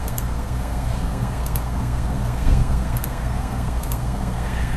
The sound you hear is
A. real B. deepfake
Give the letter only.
B